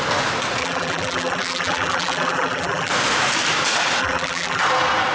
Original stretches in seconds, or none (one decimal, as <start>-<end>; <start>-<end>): 0.0-0.6; 2.9-4.0; 4.6-5.1